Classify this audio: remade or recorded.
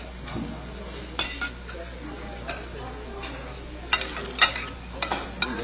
recorded